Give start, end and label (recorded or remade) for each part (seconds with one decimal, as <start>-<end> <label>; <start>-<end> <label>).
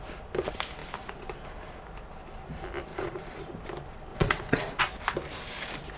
0.0-2.9 recorded; 2.9-3.5 remade; 3.5-4.1 recorded; 4.1-4.8 remade; 4.8-6.0 recorded